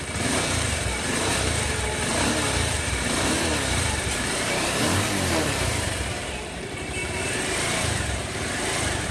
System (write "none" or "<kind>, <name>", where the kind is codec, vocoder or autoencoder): vocoder, BigVGAN v2